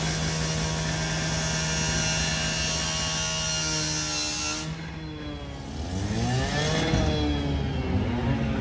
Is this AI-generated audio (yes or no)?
no